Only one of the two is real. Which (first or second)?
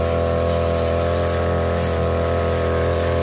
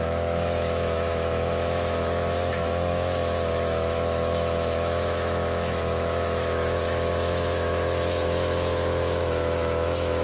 first